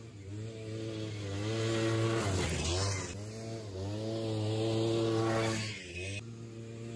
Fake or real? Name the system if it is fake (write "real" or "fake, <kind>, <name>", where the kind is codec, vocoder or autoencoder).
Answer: real